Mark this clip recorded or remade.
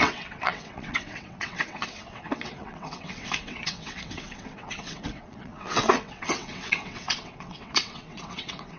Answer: remade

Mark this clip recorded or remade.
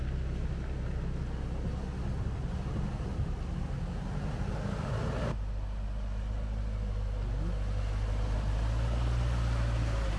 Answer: recorded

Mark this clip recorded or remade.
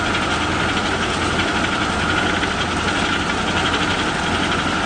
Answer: recorded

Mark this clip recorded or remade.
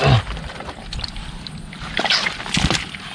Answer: recorded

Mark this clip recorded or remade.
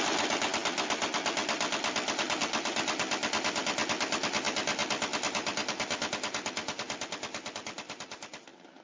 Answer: recorded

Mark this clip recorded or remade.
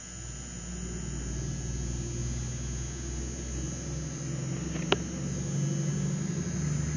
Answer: recorded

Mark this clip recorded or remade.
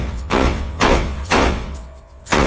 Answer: remade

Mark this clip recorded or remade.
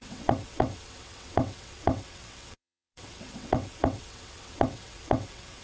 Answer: remade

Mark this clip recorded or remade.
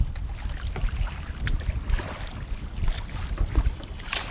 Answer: recorded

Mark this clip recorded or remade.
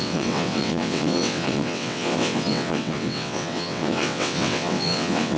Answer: remade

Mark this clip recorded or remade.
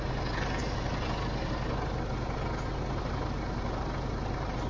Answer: recorded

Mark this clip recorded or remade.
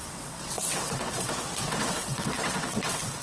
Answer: remade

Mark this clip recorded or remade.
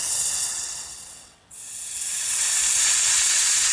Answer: remade